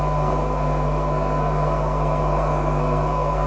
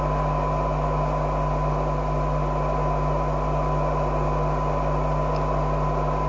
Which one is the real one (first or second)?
second